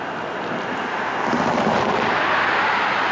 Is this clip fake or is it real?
real